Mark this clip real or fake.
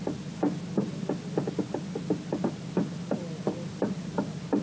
real